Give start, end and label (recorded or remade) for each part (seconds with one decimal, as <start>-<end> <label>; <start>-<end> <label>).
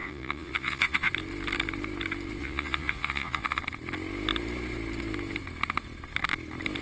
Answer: 0.0-1.1 remade; 1.1-2.4 recorded; 2.4-3.6 remade; 3.6-6.8 recorded